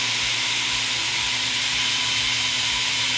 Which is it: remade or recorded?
recorded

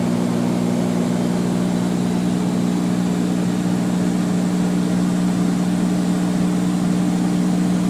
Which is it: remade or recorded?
recorded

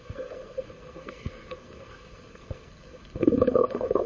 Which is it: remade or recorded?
remade